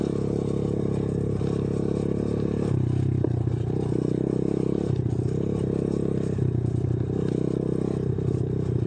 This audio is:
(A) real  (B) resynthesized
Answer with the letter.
A